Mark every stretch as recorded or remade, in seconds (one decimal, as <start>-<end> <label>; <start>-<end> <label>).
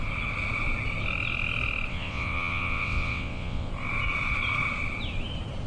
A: 0.0-1.9 recorded; 1.9-3.7 remade; 3.7-5.7 recorded